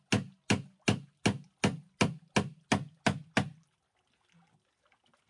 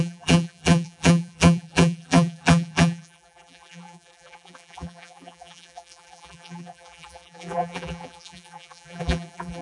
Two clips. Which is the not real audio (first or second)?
second